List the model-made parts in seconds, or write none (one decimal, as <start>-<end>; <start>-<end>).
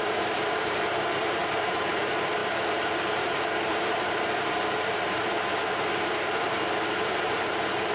0.0-7.9